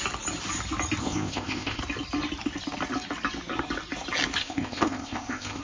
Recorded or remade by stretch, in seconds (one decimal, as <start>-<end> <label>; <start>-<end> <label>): 0.0-1.0 recorded; 1.0-1.8 remade; 1.8-4.4 recorded; 4.4-5.6 remade